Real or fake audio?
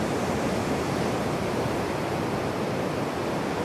real